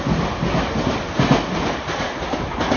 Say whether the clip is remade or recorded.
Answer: recorded